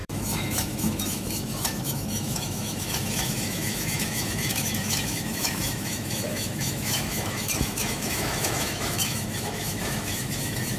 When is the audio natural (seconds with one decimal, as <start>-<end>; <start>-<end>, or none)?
none

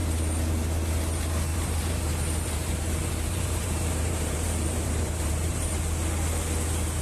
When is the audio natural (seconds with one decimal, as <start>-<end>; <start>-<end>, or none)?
0.0-1.5; 5.7-7.0

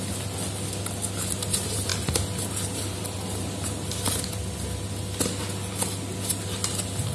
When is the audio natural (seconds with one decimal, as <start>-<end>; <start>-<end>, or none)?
0.0-7.1

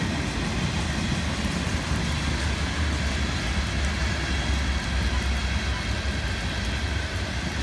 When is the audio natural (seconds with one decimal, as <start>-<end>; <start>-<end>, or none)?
0.0-7.6

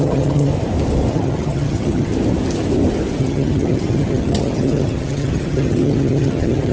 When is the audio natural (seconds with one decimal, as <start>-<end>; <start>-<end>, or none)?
0.5-1.1; 2.1-3.2

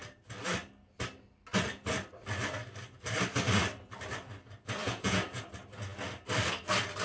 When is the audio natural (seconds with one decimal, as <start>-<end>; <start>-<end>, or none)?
0.0-4.8; 5.4-7.0

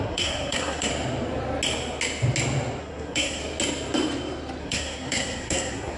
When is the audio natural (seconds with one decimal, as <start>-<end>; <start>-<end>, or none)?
0.9-2.8; 3.4-4.6

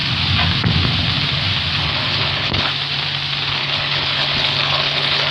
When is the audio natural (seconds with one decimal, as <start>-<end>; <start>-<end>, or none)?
0.0-1.8; 2.7-3.6